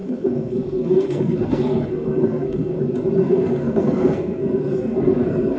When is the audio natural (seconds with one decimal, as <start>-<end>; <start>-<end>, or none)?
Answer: 2.8-3.2